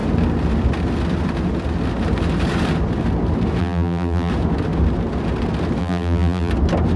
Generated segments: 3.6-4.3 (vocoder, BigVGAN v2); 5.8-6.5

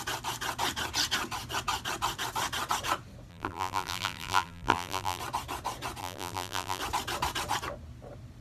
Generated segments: 3.3-5.2 (vocoder, BigVGAN v2); 6.0-6.8

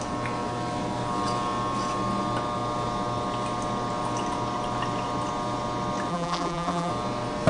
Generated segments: 6.1-6.9 (vocoder, BigVGAN v2)

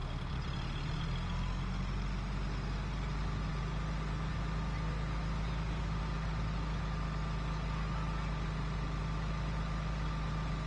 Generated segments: none

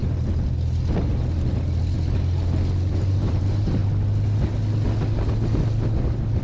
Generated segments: 2.9-3.8 (vocoder, BigVGAN v2)

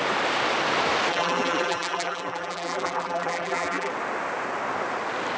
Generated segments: 1.1-3.9 (vocoder, BigVGAN v2)

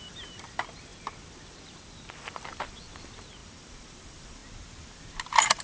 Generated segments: 0.0-4.4 (vocoder, BigVGAN v2)

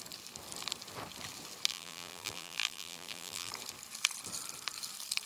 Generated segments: 1.7-3.5 (vocoder, BigVGAN v2)